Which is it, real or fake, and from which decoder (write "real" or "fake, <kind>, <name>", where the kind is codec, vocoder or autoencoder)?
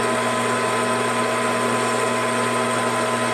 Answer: real